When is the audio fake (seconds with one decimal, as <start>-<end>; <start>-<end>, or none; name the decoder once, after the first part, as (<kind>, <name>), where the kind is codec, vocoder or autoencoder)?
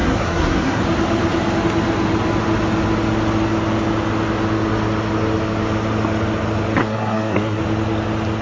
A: 0.0-0.8 (codec, SNAC); 6.8-7.6